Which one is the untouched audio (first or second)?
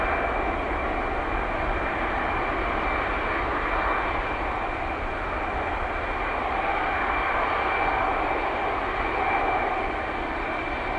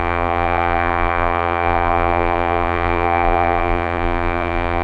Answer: first